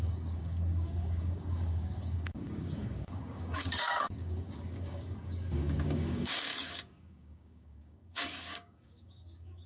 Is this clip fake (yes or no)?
yes